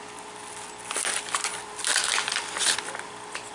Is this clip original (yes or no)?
yes